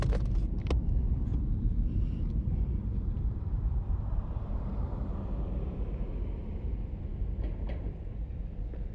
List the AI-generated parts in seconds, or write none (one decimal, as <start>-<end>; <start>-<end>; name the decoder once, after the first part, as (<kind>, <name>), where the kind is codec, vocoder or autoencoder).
2.9-5.1 (vocoder, BigVGAN v2)